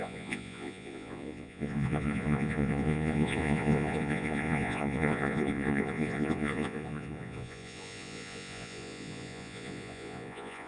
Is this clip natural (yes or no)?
no